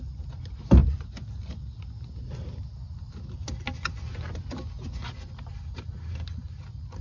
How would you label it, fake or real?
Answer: real